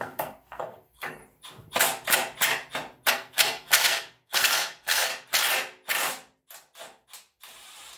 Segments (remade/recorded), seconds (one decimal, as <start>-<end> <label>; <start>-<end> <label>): 0.0-1.2 remade; 1.2-3.1 recorded; 3.1-5.1 remade; 5.1-8.0 recorded